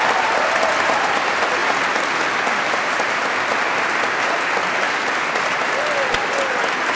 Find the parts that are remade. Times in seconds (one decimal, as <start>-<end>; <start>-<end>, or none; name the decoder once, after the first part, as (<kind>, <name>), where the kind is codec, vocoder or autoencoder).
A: none